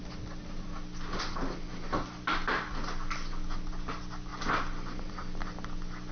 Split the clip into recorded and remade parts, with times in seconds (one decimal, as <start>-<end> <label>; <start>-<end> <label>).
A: 0.0-6.1 recorded